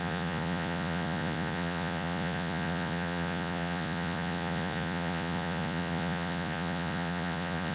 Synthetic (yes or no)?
yes